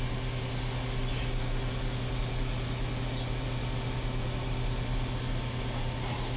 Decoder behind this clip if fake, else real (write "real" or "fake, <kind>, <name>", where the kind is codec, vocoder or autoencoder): real